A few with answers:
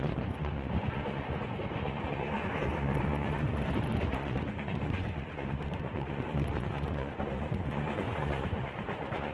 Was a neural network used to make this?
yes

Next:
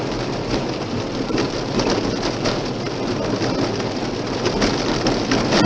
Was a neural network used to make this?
no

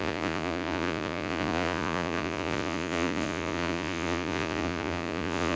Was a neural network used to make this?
yes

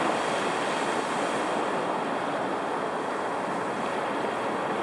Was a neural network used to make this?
no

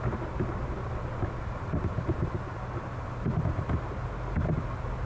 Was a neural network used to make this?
no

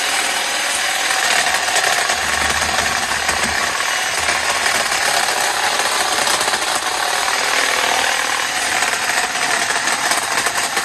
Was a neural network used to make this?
no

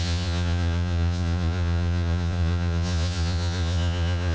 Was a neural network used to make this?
yes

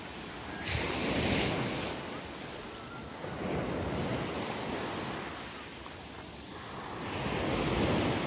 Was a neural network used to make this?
no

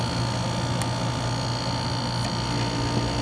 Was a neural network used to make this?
no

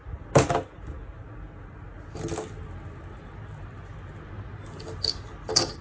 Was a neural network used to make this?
no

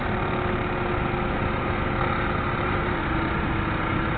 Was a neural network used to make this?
no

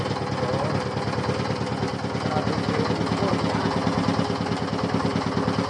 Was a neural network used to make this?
no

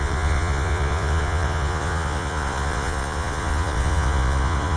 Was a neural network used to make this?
yes